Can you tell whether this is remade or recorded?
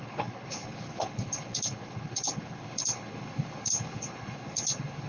remade